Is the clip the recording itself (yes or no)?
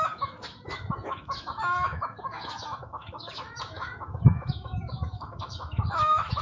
no